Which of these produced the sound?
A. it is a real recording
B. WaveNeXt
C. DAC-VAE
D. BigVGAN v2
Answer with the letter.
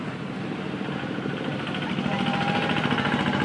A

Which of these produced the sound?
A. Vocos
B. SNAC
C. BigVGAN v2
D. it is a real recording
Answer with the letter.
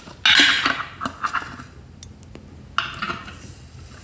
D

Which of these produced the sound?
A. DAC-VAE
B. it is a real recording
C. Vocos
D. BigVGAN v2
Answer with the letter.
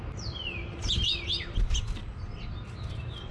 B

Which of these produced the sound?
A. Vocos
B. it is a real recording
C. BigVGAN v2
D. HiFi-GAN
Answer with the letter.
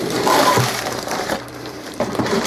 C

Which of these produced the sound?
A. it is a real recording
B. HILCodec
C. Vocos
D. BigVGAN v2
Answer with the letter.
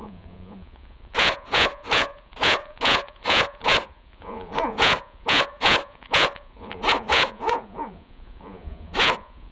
C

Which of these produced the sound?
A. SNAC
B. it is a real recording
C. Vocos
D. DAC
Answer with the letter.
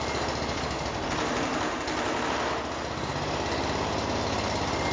B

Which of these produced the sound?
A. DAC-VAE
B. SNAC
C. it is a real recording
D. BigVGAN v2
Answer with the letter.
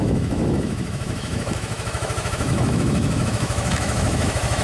A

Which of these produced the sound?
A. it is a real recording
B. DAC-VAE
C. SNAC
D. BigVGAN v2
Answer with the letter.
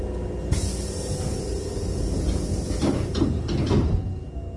A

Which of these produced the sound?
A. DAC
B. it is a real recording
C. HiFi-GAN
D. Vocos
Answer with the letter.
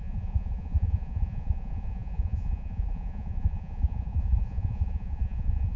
D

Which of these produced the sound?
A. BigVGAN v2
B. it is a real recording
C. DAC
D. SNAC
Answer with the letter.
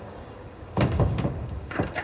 C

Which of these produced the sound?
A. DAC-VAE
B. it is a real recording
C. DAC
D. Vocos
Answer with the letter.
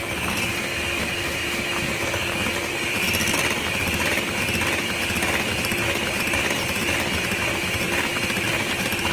B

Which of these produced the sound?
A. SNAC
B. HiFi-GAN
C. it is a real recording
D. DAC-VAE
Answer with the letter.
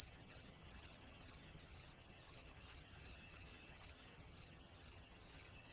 B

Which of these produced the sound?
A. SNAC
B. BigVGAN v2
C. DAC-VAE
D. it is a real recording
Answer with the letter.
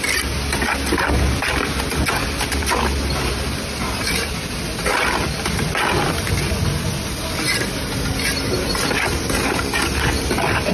D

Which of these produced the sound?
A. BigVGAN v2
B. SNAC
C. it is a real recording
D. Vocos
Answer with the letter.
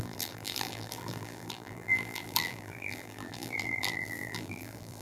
A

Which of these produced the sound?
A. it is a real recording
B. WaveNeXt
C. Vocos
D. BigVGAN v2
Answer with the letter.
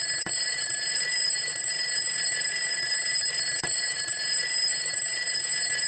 C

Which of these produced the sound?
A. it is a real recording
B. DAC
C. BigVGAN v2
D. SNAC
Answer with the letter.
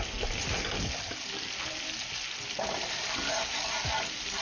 A